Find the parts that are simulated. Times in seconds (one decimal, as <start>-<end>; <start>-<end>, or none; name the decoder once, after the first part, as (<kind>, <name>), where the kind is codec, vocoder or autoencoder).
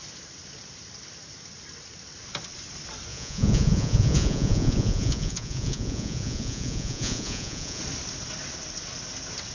3.1-7.8 (vocoder, Vocos)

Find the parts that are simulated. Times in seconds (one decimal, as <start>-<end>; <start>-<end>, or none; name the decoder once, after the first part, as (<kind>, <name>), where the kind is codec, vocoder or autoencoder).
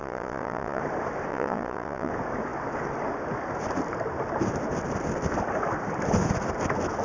0.0-0.8 (vocoder, Vocos); 1.3-2.1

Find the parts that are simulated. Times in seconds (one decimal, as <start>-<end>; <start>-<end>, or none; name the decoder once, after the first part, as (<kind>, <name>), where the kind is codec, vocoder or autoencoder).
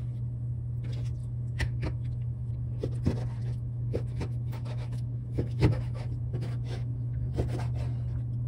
1.2-2.5 (autoencoder, DAC-VAE); 3.4-7.3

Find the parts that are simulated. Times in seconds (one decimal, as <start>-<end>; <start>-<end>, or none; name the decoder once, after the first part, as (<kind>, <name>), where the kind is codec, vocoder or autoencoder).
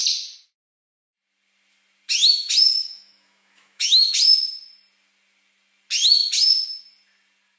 2.7-4.1 (autoencoder, DAC-VAE)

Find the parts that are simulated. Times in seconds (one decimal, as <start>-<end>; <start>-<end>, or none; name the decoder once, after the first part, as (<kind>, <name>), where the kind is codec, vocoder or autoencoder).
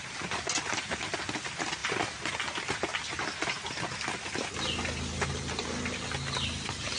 none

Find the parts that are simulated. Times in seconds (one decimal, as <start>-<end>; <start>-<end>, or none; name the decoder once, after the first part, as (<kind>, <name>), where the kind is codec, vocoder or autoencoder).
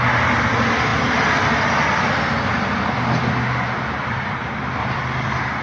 none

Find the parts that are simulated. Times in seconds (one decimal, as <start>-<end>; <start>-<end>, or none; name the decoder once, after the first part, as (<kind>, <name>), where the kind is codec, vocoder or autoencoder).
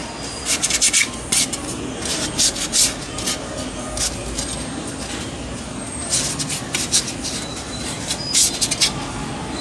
7.5-8.1 (vocoder, BigVGAN v2)